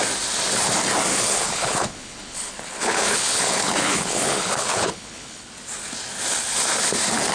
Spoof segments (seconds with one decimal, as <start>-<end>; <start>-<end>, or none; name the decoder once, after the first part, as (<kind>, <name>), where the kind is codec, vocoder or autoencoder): 1.1-5.5 (codec, HILCodec)